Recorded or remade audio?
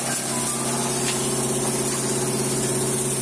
recorded